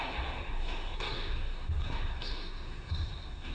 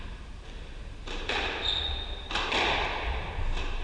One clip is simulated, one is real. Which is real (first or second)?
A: second